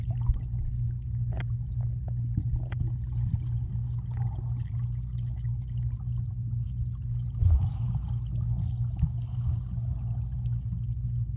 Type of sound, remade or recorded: recorded